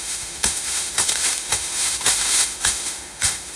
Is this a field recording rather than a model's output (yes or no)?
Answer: no